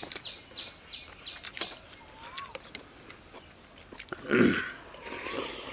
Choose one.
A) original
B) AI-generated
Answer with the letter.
A